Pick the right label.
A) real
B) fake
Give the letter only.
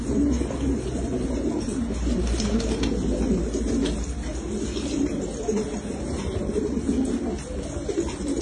A